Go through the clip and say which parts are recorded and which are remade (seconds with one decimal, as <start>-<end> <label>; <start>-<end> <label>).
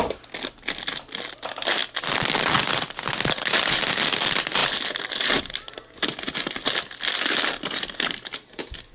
0.0-8.9 recorded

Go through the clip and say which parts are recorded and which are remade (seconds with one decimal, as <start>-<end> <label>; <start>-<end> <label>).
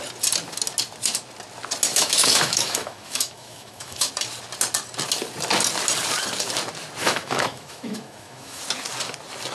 0.0-1.9 recorded; 1.9-4.1 remade; 4.1-7.0 recorded; 7.0-8.6 remade; 8.6-9.5 recorded